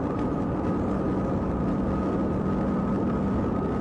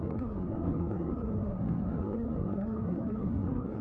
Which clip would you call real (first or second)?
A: first